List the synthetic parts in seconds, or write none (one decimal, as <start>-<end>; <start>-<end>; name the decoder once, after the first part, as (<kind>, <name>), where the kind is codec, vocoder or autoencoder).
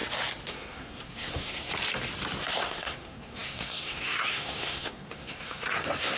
0.5-1.7 (codec, SNAC); 2.6-6.2